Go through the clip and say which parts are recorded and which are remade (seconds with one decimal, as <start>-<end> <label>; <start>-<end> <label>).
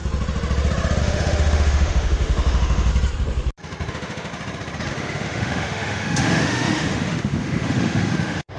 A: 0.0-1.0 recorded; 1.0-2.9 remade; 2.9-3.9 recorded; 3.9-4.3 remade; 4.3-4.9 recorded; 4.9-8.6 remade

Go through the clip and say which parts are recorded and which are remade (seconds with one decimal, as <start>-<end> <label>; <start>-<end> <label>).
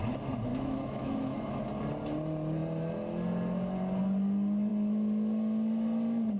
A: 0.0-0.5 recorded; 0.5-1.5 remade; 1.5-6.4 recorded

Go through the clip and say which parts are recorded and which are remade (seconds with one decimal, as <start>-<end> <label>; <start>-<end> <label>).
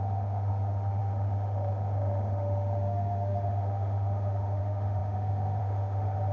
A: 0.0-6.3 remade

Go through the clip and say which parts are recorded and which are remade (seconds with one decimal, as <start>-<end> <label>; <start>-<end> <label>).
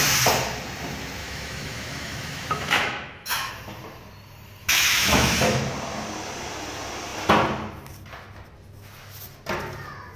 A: 0.0-1.2 recorded; 1.2-3.5 remade; 3.5-4.6 recorded; 4.6-5.6 remade; 5.6-10.2 recorded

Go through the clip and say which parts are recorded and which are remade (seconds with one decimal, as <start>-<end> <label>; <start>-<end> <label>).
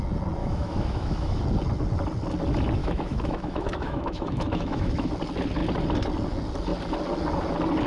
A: 0.0-0.4 recorded; 0.4-1.4 remade; 1.4-2.8 recorded; 2.8-5.1 remade; 5.1-7.9 recorded